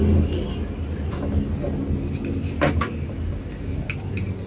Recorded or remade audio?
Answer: recorded